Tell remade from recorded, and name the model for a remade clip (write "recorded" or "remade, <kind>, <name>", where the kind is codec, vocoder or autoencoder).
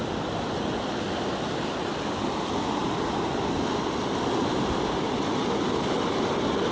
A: recorded